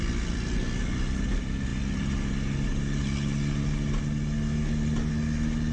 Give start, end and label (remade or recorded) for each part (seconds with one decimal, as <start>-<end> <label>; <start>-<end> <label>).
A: 0.0-5.7 recorded